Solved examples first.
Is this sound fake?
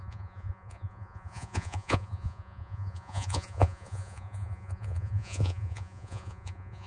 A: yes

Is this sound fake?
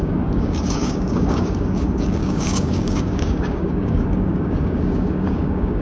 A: yes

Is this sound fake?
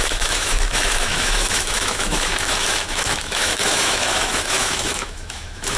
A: yes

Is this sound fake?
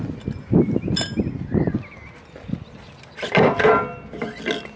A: no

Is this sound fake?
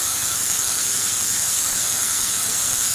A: yes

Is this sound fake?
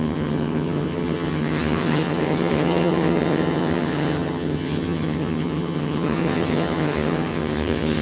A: yes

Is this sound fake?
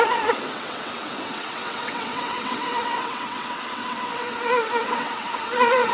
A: yes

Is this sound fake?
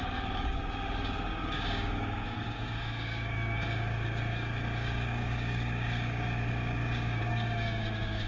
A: yes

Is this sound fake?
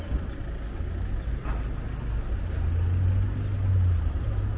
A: no